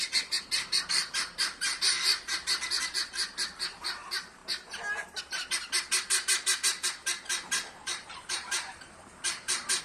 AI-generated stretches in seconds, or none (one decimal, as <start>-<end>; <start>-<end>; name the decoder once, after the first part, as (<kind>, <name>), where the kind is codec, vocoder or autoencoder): 7.8-9.8 (vocoder, BigVGAN v2)